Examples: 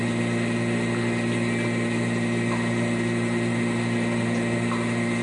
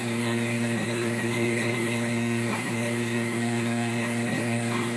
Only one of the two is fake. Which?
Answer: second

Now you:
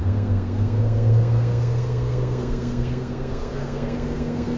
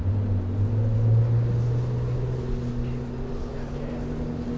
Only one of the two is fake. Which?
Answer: first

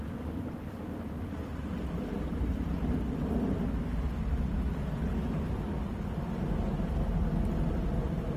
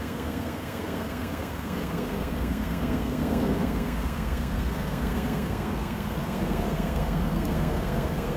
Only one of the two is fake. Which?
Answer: second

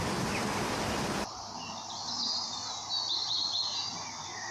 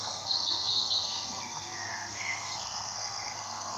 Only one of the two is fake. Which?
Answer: second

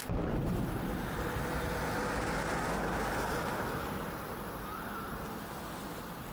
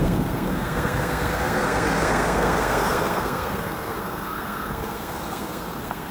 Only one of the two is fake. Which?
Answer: second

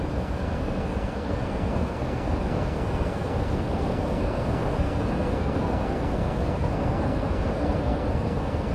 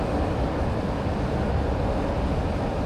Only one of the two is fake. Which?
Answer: first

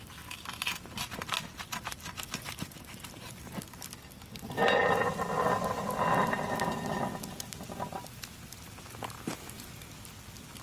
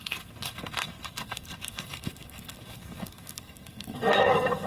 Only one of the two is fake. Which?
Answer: second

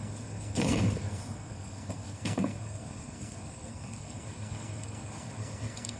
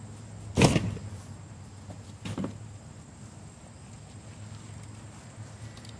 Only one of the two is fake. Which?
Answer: first